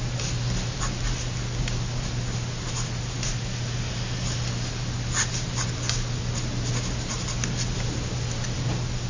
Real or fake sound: real